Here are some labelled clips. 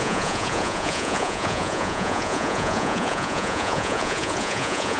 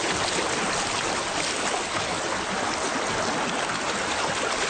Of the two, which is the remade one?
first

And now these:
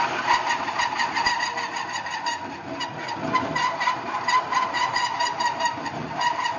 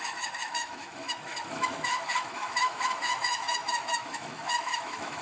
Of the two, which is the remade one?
second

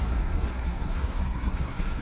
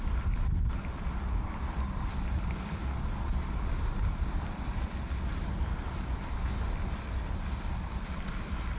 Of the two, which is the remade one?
first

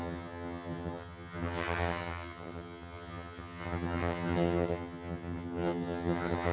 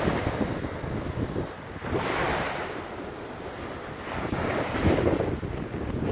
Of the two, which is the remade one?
first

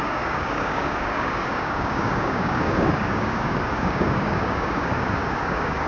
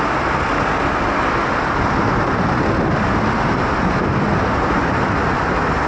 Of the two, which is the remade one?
first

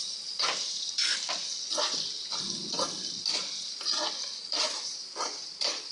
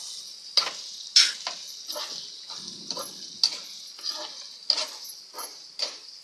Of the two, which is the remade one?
first